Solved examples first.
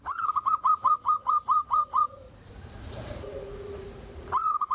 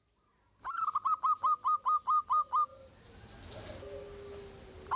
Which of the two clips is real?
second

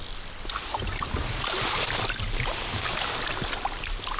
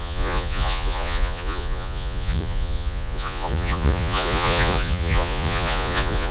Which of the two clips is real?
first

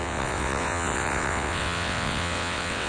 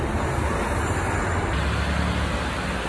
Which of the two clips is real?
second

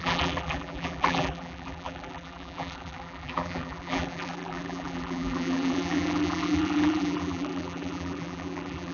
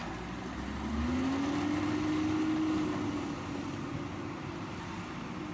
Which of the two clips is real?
second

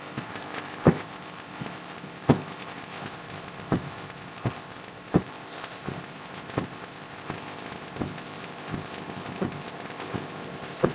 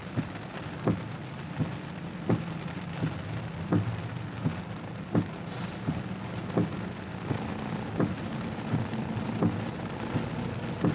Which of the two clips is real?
second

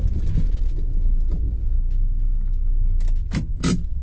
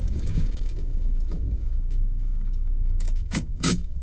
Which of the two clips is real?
first